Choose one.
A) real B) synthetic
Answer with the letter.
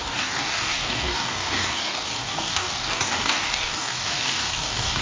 B